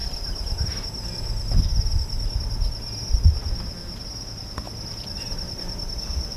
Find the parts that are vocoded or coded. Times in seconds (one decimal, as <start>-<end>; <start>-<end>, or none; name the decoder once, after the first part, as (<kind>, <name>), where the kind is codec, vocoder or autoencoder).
none